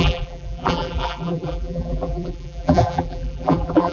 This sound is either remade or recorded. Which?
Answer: remade